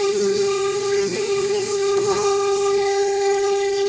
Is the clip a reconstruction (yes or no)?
yes